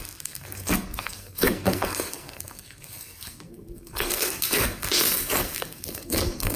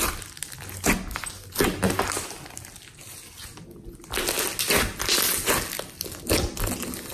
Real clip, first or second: second